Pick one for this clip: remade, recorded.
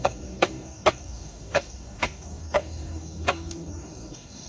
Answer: remade